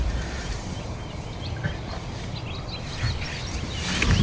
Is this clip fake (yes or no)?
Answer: no